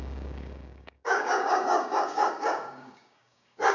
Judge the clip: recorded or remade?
remade